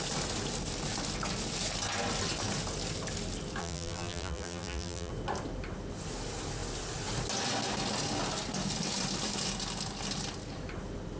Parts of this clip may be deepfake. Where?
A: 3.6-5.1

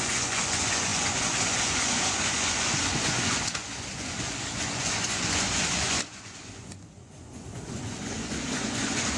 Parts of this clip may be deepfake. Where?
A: 0.0-9.2

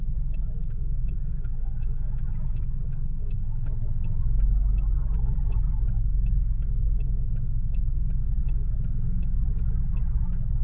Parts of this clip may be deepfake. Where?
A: 0.6-3.7

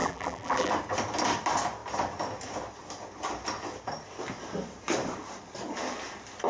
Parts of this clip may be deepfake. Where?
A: 0.0-0.7

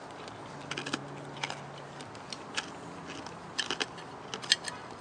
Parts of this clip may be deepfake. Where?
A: none

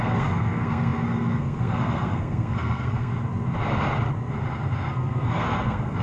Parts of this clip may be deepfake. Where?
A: 0.0-3.1; 4.9-6.0